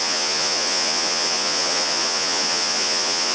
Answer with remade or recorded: remade